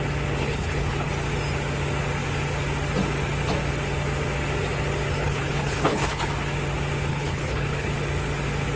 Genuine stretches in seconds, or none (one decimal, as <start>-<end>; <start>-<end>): 0.0-0.4; 1.1-5.2; 6.3-7.1; 7.9-8.8